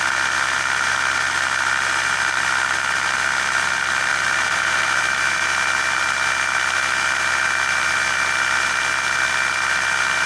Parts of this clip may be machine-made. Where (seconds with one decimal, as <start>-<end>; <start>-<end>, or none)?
4.1-5.0